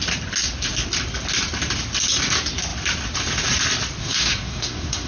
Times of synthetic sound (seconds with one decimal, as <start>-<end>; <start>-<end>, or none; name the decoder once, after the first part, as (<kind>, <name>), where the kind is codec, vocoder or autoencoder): 4.0-5.1 (codec, SNAC)